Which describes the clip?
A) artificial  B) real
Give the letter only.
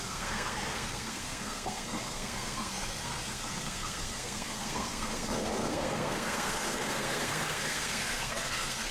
A